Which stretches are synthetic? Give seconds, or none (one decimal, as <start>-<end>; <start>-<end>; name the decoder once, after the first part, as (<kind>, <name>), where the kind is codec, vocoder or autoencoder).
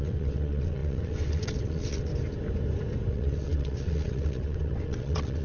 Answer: 0.0-2.1 (vocoder, WaveNeXt); 3.1-5.4